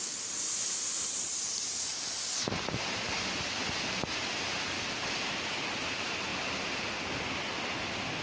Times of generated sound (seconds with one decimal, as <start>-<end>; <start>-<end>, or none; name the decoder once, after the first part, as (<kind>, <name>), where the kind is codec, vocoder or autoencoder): none